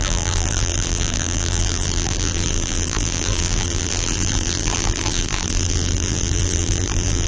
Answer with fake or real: fake